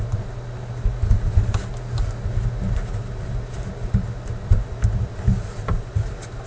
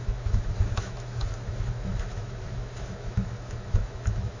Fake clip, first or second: second